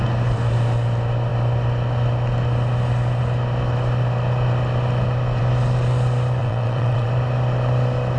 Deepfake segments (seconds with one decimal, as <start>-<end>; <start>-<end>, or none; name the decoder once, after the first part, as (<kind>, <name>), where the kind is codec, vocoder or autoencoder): 6.4-7.1 (vocoder, WaveNeXt)